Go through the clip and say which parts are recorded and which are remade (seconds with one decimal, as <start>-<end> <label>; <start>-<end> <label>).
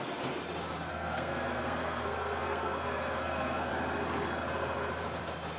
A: 0.0-0.9 recorded; 0.9-3.7 remade; 3.7-5.6 recorded